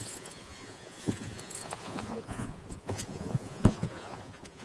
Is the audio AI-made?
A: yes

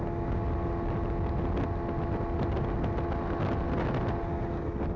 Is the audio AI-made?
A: no